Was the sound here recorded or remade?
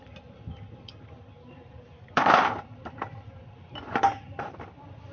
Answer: remade